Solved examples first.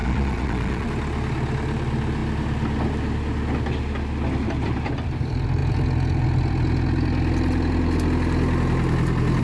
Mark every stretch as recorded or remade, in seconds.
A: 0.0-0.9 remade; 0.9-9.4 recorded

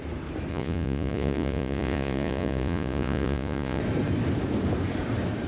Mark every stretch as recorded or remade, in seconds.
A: 0.0-0.5 recorded; 0.5-3.8 remade; 3.8-5.5 recorded